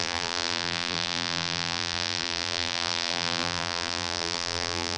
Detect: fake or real fake